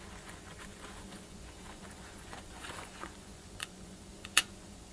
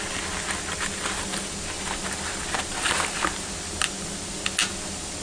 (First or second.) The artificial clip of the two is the first